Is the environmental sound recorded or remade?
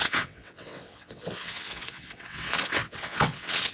remade